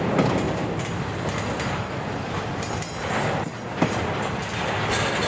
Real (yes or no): yes